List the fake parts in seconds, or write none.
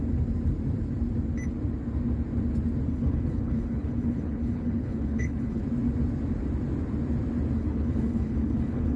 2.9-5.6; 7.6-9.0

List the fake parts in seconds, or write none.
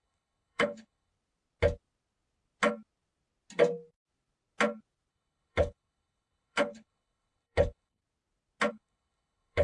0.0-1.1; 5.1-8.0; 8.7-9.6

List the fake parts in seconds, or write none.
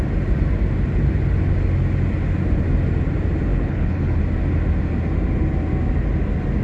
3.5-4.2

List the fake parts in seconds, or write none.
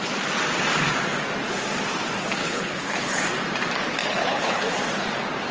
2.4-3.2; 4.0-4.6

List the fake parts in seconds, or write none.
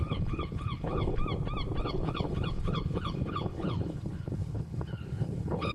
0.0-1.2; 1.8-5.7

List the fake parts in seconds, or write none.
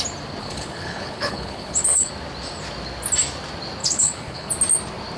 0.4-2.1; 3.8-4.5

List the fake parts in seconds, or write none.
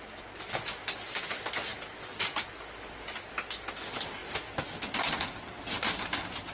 none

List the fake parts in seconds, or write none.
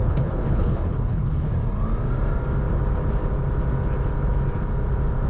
0.0-1.5